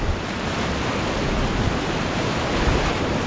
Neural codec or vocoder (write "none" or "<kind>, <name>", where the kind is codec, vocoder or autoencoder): none